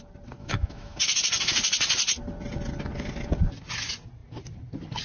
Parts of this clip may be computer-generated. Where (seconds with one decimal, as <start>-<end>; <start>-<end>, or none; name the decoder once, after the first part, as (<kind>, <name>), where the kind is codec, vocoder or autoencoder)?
0.4-1.0 (autoencoder, DAC-VAE)